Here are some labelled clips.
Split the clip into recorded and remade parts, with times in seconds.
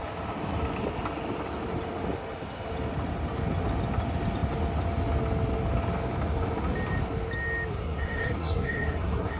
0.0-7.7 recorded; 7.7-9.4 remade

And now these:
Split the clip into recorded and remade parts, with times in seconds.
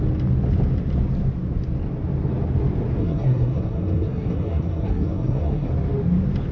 0.0-3.0 recorded; 3.0-5.7 remade; 5.7-6.5 recorded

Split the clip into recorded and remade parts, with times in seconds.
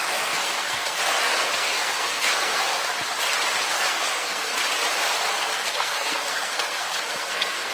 0.0-2.9 remade; 2.9-3.7 recorded; 3.7-4.5 remade; 4.5-5.3 recorded; 5.3-7.7 remade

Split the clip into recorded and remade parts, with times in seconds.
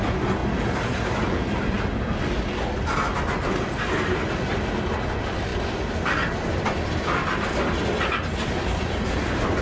0.0-9.6 recorded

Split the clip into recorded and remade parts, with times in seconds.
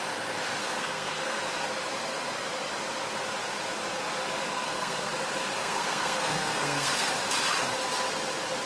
0.0-0.6 recorded; 0.6-1.4 remade; 1.4-4.5 recorded; 4.5-5.1 remade; 5.1-5.6 recorded; 5.6-7.1 remade; 7.1-8.7 recorded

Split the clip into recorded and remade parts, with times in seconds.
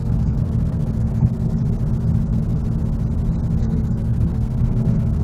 0.0-1.6 remade; 1.6-2.2 recorded; 2.2-2.6 remade; 2.6-3.6 recorded; 3.6-5.2 remade